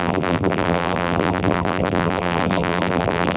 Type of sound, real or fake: fake